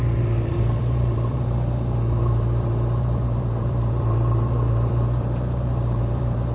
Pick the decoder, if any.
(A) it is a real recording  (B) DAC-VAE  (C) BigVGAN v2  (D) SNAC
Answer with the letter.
C